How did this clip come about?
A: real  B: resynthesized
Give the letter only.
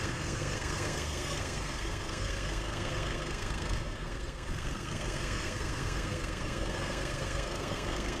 B